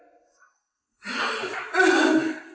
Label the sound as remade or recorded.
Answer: recorded